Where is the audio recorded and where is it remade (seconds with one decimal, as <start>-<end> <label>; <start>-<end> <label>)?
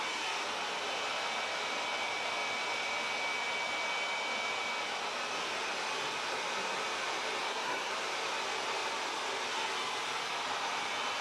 0.0-7.4 recorded; 7.4-7.9 remade; 7.9-11.2 recorded